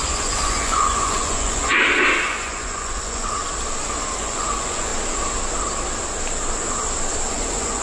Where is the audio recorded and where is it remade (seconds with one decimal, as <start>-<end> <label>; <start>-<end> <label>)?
0.0-1.7 remade; 1.7-2.3 recorded; 2.3-3.4 remade; 3.4-4.2 recorded; 4.2-4.9 remade; 4.9-7.3 recorded; 7.3-7.8 remade

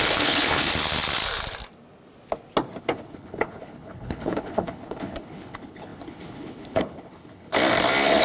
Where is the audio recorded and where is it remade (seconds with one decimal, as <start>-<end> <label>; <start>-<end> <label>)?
0.0-0.7 remade; 0.7-2.8 recorded; 2.8-7.5 remade; 7.5-8.2 recorded